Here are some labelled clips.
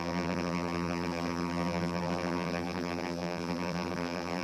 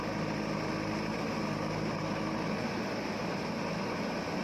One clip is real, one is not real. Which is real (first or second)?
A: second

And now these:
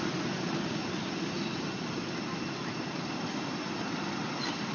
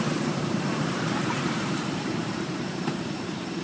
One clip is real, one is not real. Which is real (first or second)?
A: first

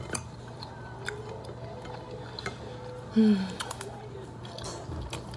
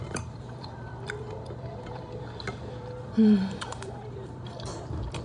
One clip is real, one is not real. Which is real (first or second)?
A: first